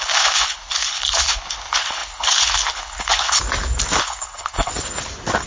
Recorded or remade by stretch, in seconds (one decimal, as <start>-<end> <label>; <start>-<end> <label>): 0.0-3.4 remade; 3.4-4.0 recorded; 4.0-4.7 remade; 4.7-5.5 recorded